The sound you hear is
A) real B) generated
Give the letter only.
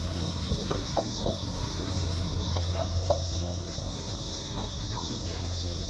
B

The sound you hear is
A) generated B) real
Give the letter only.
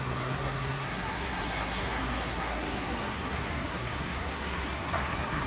A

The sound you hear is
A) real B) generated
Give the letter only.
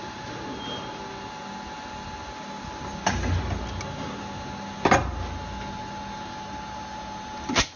A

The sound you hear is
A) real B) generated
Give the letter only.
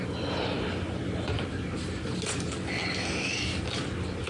A